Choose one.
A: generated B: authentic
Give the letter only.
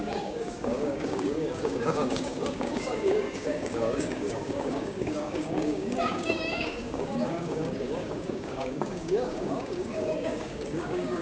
A